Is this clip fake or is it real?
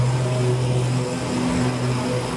real